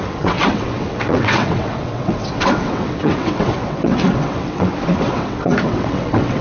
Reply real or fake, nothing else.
fake